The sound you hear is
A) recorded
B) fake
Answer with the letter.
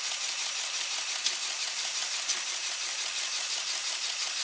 A